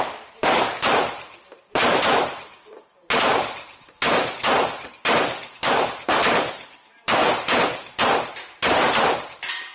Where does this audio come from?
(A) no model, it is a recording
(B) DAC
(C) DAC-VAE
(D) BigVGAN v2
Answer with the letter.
D